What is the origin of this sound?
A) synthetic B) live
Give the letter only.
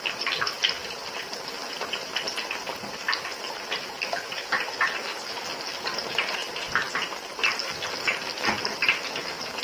B